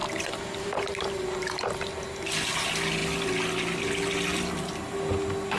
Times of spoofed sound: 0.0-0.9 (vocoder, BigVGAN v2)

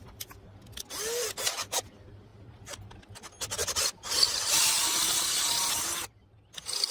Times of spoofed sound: 3.6-5.0 (vocoder, BigVGAN v2)

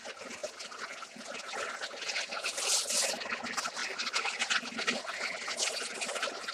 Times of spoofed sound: 3.8-4.4 (vocoder, BigVGAN v2)

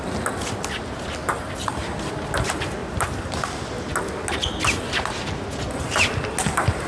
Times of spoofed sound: 1.2-2.1 (vocoder, BigVGAN v2); 2.8-3.3

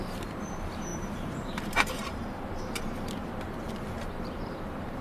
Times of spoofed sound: 0.0-2.2 (vocoder, BigVGAN v2); 3.7-5.0

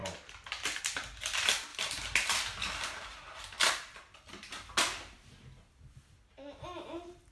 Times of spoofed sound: none

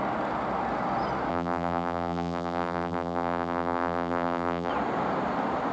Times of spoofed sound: 1.3-4.7 (vocoder, BigVGAN v2)

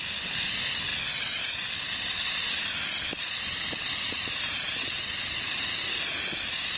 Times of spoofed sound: 4.8-5.6 (vocoder, BigVGAN v2)